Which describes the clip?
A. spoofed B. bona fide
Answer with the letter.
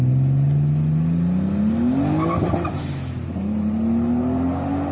B